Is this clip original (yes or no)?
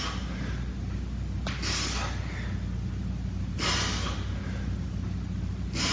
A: yes